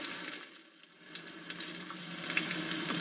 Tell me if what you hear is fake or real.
real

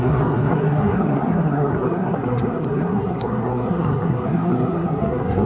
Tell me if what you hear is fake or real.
fake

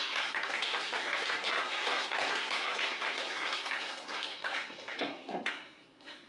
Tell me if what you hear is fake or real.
fake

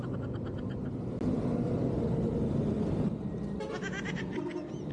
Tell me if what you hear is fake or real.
real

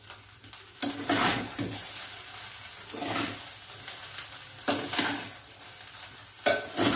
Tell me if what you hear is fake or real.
real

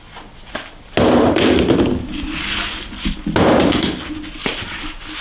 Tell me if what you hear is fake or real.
real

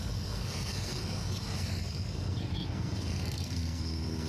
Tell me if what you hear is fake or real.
fake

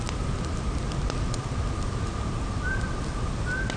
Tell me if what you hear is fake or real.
real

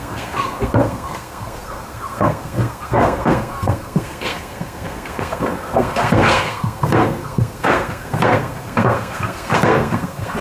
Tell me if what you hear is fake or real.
fake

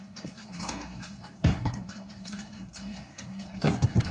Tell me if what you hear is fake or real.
fake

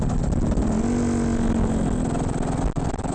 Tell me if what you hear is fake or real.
real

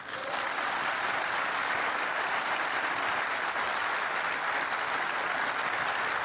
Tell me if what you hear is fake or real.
real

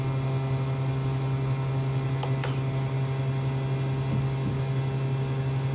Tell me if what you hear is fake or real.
real